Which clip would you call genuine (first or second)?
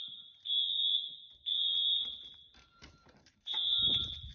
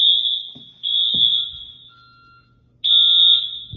second